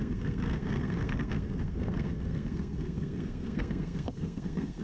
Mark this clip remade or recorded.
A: remade